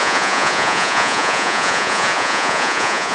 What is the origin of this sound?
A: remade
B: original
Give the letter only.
A